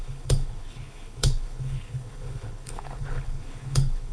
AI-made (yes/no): yes